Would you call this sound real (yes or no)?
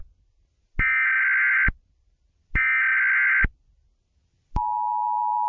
yes